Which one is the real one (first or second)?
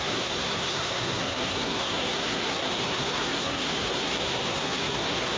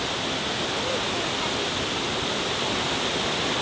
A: second